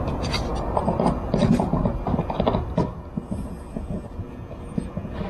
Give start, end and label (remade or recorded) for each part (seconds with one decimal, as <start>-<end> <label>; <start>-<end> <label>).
0.0-5.3 recorded